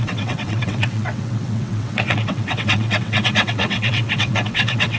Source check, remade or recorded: remade